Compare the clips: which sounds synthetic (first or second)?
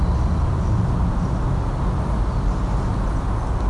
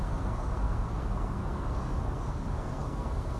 second